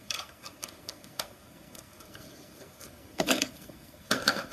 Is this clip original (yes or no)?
no